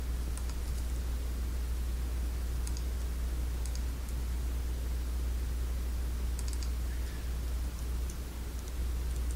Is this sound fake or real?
real